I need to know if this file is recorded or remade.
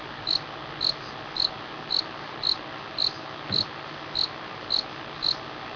recorded